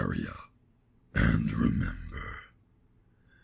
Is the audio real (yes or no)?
yes